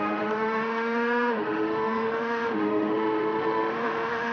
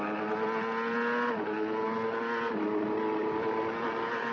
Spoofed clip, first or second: first